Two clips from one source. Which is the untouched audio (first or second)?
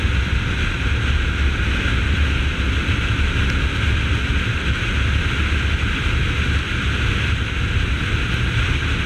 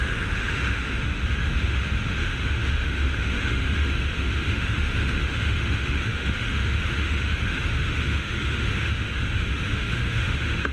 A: first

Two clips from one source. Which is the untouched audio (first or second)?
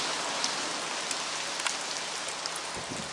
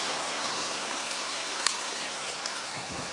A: first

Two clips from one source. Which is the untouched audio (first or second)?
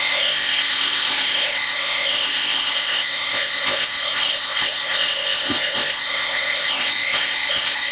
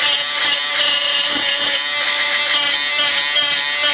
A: second